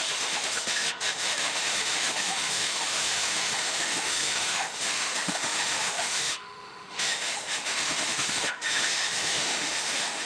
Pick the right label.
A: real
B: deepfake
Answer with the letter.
B